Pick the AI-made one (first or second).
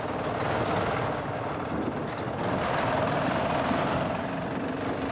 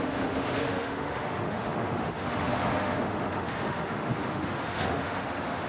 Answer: second